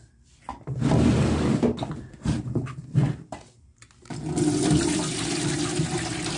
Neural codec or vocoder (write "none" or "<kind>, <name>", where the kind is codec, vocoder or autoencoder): vocoder, BigVGAN v2